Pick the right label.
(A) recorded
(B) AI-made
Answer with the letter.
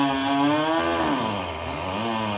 A